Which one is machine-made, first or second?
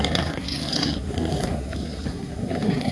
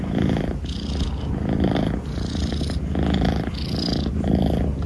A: first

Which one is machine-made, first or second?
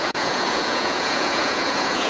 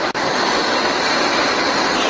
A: first